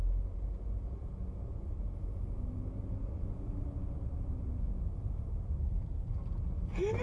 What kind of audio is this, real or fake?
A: real